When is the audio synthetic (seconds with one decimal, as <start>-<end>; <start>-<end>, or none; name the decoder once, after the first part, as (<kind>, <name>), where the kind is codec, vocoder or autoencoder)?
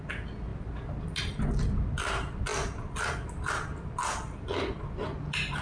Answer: none